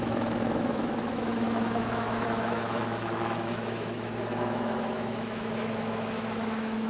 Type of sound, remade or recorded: remade